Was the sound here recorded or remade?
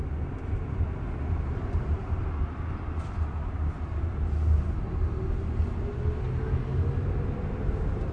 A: recorded